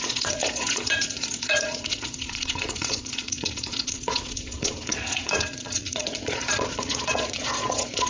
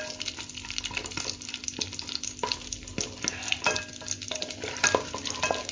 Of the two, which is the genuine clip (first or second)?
second